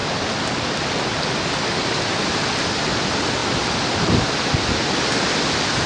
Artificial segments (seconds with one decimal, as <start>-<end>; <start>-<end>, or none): none